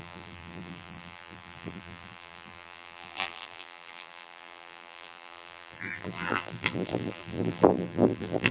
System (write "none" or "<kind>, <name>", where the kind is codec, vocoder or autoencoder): vocoder, BigVGAN v2